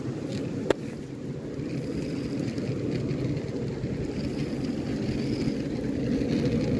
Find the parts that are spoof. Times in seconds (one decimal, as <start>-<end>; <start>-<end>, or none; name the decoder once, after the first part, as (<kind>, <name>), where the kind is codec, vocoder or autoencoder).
none